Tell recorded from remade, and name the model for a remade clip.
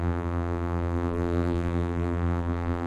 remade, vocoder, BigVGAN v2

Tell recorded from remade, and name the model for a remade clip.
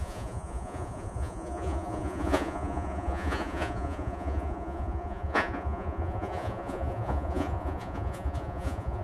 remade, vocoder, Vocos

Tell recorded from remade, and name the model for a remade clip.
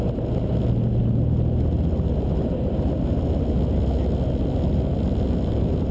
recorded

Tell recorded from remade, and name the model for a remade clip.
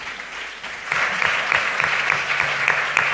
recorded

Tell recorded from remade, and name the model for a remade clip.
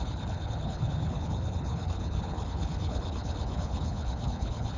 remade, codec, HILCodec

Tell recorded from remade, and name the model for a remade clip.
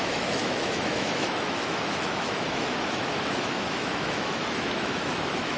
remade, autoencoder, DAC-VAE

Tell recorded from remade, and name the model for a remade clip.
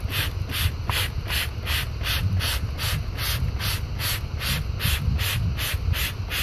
recorded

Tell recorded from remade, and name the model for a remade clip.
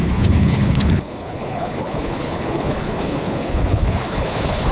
remade, codec, HILCodec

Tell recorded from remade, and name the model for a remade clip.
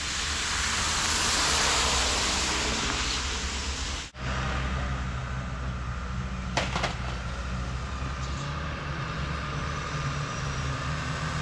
recorded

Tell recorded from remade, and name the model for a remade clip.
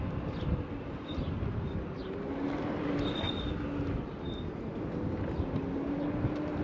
recorded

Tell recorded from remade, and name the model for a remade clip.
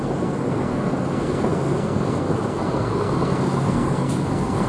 remade, codec, SNAC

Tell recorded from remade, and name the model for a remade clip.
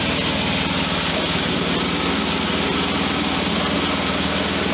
recorded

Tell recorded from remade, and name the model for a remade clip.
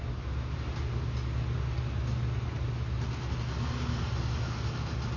recorded